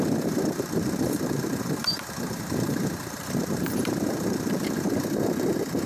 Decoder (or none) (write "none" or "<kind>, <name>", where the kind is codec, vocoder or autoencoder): vocoder, BigVGAN v2